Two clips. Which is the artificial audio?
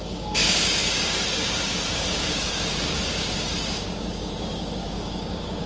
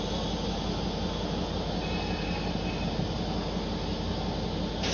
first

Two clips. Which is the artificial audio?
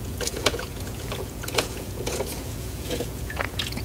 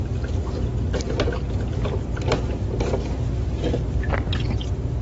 first